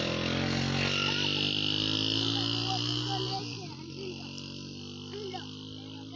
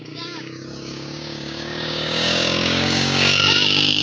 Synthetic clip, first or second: second